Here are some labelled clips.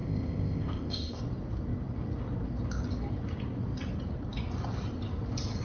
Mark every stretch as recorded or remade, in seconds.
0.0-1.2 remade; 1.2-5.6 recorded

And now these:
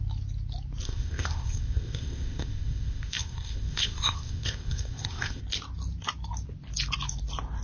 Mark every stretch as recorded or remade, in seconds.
0.0-0.8 recorded; 0.8-5.4 remade; 5.4-7.6 recorded

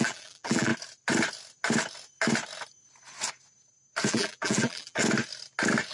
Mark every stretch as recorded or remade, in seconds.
0.0-0.7 remade; 0.7-4.1 recorded; 4.1-5.0 remade; 5.0-5.9 recorded

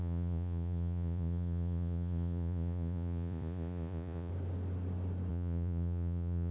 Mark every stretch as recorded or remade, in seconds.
0.0-4.3 remade; 4.3-5.3 recorded; 5.3-6.5 remade

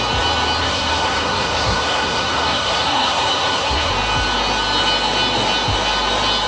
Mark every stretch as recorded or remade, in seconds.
0.0-0.6 recorded; 0.6-3.9 remade; 3.9-6.5 recorded

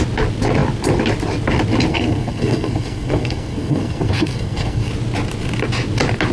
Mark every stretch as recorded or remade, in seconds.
0.0-1.9 recorded; 1.9-4.9 remade; 4.9-6.3 recorded

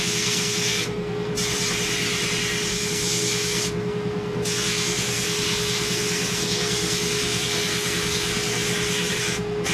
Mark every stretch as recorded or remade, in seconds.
0.0-1.3 remade; 1.3-2.7 recorded; 2.7-9.7 remade

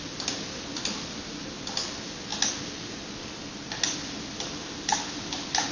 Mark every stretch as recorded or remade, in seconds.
0.0-5.7 recorded